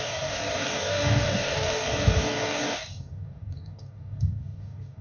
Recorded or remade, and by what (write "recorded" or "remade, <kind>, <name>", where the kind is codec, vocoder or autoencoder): remade, codec, DAC